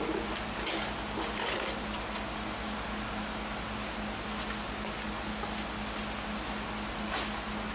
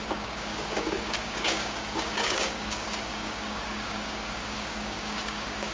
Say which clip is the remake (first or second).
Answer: second